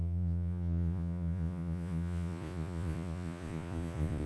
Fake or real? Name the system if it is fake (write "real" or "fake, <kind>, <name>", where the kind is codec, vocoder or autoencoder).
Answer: fake, vocoder, Vocos